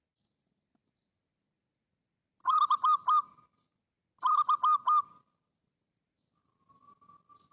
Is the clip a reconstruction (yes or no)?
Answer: no